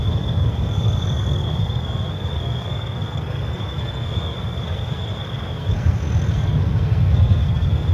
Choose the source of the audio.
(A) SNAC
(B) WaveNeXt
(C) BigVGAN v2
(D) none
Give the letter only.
A